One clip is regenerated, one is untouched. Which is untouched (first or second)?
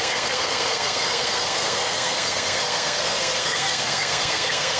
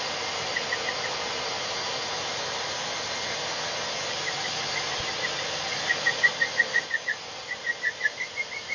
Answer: second